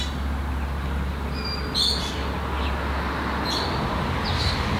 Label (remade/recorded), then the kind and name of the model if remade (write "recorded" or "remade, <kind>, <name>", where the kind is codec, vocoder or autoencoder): recorded